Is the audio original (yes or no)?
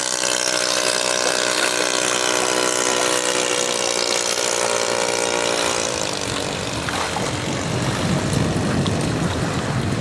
yes